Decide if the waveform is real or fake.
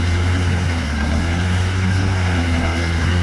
fake